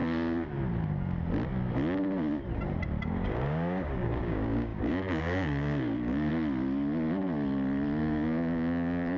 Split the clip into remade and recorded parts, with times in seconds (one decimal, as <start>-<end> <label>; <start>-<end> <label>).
0.0-3.0 recorded; 3.0-6.3 remade; 6.3-8.0 recorded; 8.0-9.2 remade